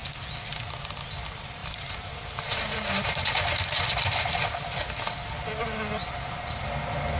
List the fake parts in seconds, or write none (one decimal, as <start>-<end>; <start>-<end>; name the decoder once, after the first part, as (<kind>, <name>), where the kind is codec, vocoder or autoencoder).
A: 1.6-3.3 (vocoder, BigVGAN v2)